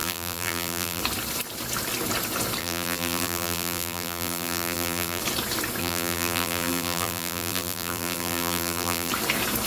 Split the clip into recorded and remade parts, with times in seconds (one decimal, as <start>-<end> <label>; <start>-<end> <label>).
0.0-1.0 remade; 1.0-2.6 recorded; 2.6-5.2 remade; 5.2-5.8 recorded; 5.8-9.1 remade; 9.1-9.7 recorded